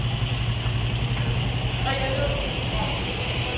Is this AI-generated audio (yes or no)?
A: no